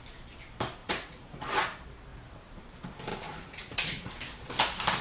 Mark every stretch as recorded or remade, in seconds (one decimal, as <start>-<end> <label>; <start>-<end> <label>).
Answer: 0.0-0.8 recorded; 0.8-1.4 remade; 1.4-2.1 recorded; 2.1-2.6 remade; 2.6-3.1 recorded; 3.1-4.1 remade; 4.1-5.0 recorded

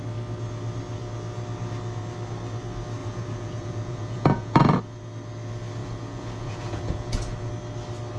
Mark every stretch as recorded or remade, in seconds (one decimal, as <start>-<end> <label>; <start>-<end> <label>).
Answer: 0.0-3.0 recorded; 3.0-4.8 remade; 4.8-5.8 recorded; 5.8-7.5 remade; 7.5-8.2 recorded

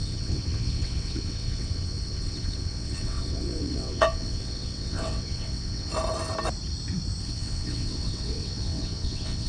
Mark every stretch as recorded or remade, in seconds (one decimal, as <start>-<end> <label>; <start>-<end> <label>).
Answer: 0.0-5.9 remade; 5.9-7.2 recorded; 7.2-9.5 remade

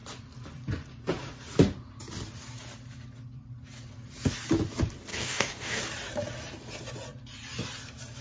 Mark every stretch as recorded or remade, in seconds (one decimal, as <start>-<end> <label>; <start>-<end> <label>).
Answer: 0.0-5.1 recorded; 5.1-5.8 remade; 5.8-8.2 recorded

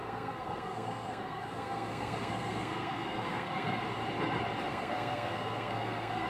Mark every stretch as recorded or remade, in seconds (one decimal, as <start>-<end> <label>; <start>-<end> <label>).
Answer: 0.0-3.8 remade; 3.8-4.7 recorded; 4.7-6.3 remade